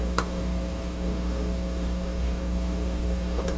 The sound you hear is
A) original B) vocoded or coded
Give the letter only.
B